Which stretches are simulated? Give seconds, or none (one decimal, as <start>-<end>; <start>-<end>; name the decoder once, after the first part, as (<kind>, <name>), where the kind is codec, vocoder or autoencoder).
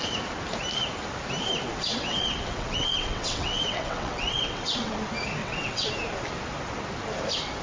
1.9-4.9 (vocoder, WaveNeXt); 5.4-5.9